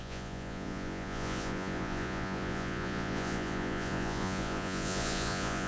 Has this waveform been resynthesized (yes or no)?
yes